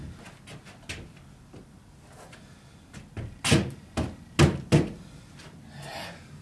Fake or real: real